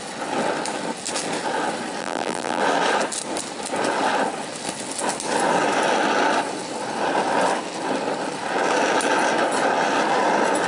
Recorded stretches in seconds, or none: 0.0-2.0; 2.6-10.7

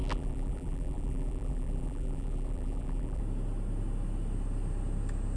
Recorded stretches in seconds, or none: 3.2-5.4

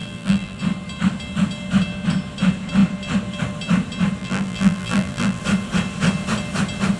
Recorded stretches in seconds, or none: 0.6-4.2; 5.4-7.0

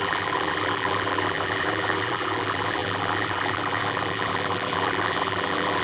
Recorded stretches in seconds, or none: none